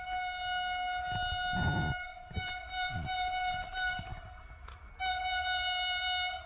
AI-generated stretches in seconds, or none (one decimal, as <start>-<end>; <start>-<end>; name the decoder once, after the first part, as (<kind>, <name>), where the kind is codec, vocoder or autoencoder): 4.1-4.9 (autoencoder, DAC-VAE)